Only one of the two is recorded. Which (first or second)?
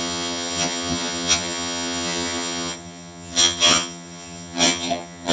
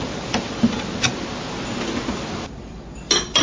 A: second